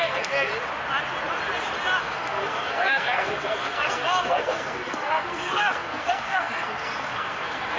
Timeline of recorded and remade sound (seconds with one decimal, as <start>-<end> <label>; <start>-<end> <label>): 0.0-0.5 remade; 0.5-2.0 recorded; 2.0-7.8 remade